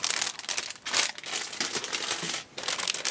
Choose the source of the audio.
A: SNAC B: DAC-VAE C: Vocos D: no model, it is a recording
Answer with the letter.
D